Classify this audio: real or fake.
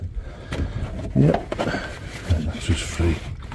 real